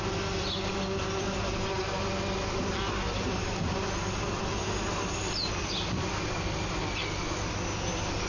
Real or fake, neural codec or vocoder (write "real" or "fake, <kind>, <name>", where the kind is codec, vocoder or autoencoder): real